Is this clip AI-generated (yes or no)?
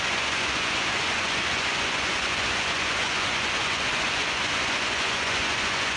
yes